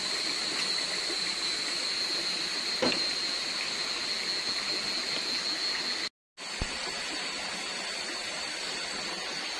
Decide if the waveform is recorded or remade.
recorded